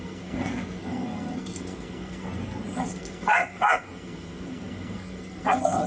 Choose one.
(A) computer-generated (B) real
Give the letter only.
A